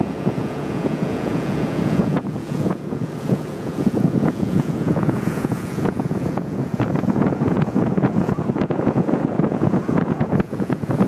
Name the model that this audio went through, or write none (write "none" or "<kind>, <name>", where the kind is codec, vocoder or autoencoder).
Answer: vocoder, Vocos